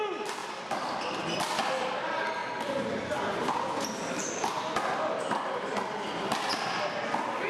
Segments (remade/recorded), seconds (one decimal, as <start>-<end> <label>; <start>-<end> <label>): 0.0-0.4 recorded; 0.4-1.2 remade; 1.2-2.4 recorded; 2.4-5.2 remade; 5.2-7.5 recorded